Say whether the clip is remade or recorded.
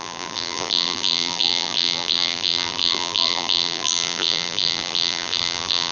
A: remade